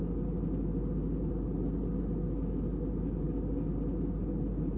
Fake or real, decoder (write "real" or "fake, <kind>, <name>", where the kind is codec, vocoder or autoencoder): real